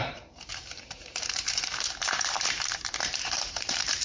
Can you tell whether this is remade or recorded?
remade